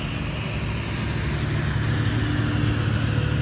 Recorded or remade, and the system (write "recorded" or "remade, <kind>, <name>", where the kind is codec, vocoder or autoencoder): recorded